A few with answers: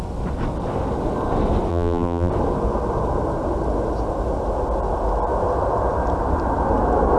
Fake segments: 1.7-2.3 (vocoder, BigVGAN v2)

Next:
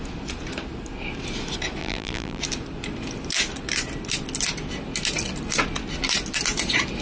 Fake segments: 1.8-2.4 (vocoder, BigVGAN v2)

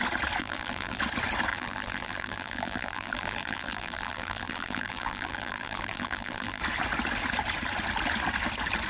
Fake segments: 0.4-1.0 (vocoder, BigVGAN v2); 1.5-6.6

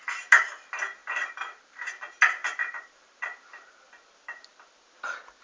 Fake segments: 1.0-1.9 (vocoder, BigVGAN v2); 2.4-3.8